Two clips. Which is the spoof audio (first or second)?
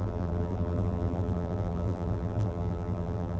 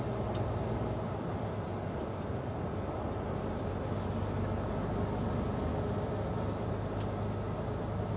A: first